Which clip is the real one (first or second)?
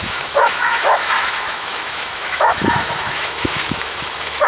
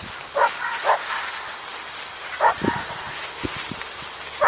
second